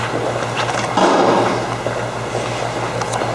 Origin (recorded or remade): recorded